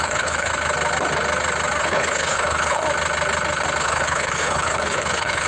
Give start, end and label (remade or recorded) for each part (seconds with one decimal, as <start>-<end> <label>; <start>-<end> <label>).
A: 0.0-0.5 remade; 0.5-1.8 recorded; 1.8-2.8 remade; 2.8-3.8 recorded; 3.8-5.5 remade